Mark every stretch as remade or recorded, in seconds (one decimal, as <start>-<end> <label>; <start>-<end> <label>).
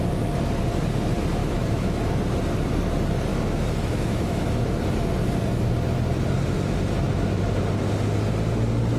0.0-1.4 recorded; 1.4-2.1 remade; 2.1-3.3 recorded; 3.3-4.5 remade; 4.5-9.0 recorded